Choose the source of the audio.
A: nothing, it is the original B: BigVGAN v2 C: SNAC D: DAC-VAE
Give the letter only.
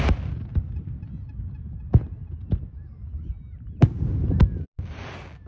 A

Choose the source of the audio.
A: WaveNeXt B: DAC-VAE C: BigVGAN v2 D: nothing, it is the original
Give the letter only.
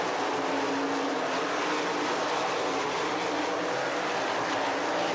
D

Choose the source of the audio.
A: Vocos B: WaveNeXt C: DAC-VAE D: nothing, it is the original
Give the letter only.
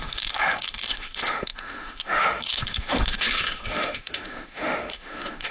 C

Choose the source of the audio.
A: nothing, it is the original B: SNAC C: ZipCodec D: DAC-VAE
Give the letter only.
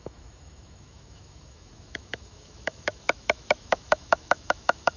D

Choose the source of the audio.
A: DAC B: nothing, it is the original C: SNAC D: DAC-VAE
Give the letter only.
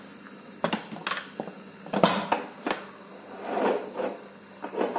B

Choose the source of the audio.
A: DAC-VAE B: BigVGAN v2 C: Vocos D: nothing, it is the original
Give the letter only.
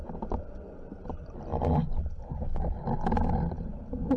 D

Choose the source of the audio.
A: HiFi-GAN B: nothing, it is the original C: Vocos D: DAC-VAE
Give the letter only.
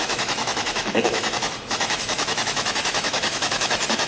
D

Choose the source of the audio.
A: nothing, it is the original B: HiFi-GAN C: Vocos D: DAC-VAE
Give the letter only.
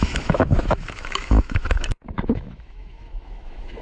D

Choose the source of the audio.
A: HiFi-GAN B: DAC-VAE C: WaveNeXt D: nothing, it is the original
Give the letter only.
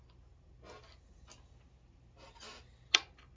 D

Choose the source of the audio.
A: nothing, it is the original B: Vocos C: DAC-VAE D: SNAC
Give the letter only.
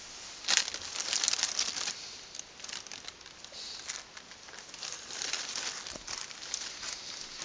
A